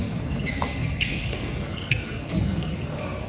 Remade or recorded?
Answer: remade